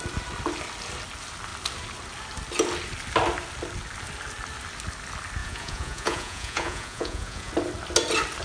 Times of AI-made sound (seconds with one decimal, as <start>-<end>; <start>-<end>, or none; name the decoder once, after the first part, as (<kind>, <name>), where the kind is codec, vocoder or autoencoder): 5.4-7.5 (vocoder, Vocos)